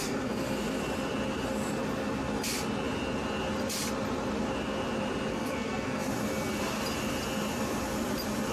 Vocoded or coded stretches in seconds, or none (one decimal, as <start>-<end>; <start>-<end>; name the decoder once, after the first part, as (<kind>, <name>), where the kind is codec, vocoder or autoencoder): 0.0-0.8 (codec, SNAC); 5.3-6.1